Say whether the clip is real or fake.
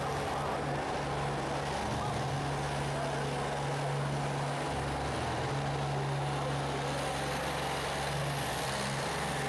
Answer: real